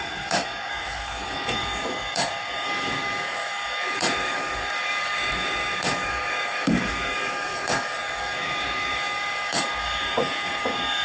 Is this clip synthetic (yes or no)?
yes